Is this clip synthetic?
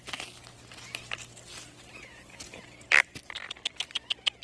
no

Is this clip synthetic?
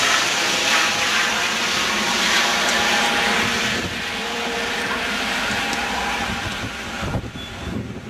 yes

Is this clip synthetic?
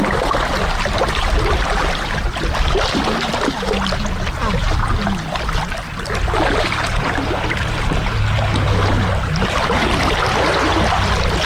no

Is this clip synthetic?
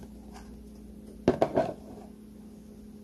no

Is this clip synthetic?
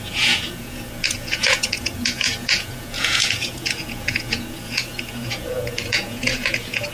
yes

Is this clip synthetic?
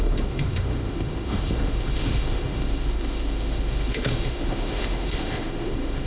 yes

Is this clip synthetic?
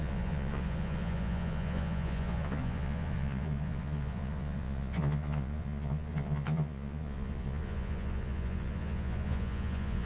yes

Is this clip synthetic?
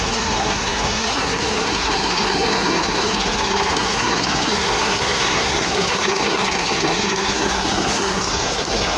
yes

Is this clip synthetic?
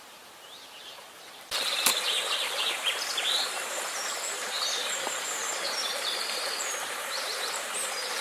yes